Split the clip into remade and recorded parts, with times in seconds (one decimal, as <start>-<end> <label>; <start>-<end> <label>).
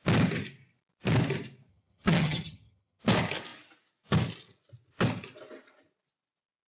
0.0-1.7 recorded; 1.7-3.0 remade; 3.0-6.7 recorded